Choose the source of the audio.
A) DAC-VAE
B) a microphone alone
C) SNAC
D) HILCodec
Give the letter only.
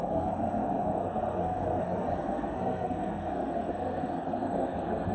C